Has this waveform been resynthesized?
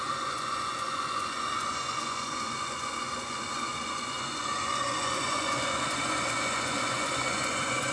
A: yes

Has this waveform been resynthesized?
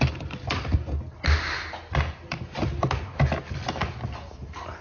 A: no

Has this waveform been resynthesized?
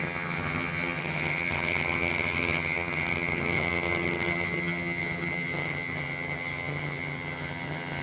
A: yes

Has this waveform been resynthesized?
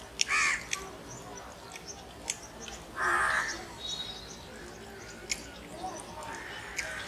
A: no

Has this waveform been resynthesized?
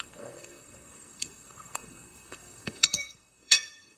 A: yes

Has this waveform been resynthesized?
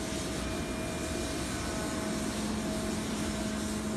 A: no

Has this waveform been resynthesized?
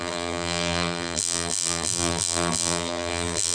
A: yes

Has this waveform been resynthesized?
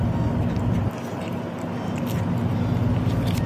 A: no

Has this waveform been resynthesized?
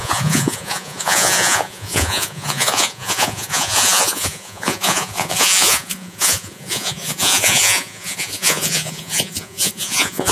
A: yes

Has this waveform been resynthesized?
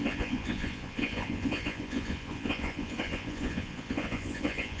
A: yes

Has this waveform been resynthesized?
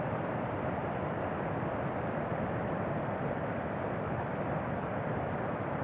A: no